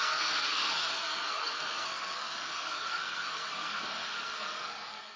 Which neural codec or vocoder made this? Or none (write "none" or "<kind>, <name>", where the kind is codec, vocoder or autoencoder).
codec, SNAC